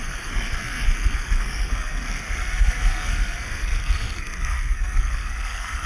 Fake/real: fake